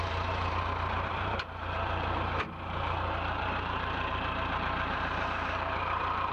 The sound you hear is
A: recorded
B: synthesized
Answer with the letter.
B